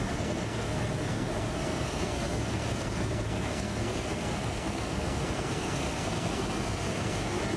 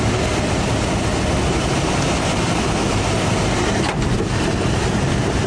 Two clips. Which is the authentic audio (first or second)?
second